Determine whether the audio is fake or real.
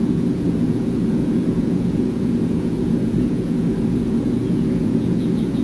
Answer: fake